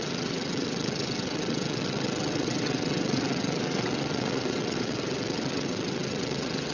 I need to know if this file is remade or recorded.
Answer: remade